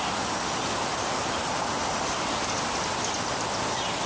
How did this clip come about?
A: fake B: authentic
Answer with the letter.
B